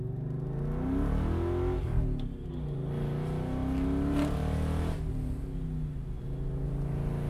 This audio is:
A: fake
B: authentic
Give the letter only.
B